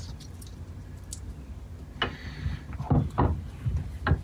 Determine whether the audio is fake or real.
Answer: real